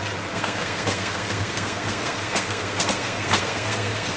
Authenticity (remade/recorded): remade